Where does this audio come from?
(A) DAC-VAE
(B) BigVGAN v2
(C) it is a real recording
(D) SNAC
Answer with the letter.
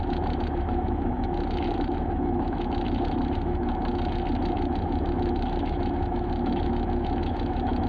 A